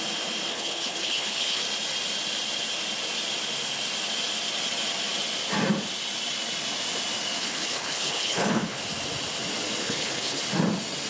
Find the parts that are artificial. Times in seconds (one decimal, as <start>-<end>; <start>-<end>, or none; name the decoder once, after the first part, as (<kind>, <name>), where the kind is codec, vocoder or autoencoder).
0.5-1.6 (codec, HILCodec); 7.4-8.8; 9.8-10.4